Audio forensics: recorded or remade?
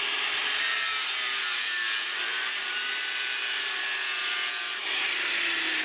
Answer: recorded